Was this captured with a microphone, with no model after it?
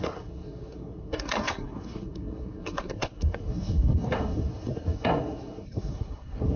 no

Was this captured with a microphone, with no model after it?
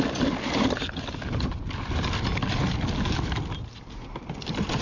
yes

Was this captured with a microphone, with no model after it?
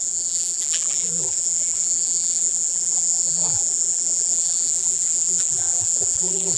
no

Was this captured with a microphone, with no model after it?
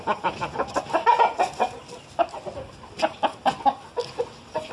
yes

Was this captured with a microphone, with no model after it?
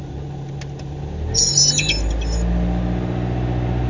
yes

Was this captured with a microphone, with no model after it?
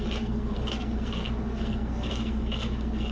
no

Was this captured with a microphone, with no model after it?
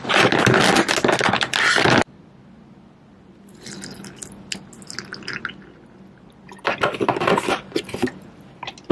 yes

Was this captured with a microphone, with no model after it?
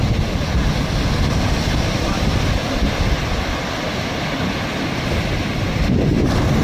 yes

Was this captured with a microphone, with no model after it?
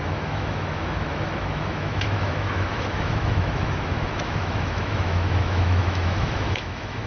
no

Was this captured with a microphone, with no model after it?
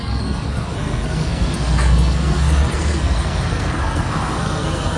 no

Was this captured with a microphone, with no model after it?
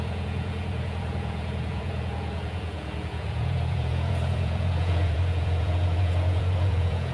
no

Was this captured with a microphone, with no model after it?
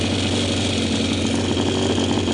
yes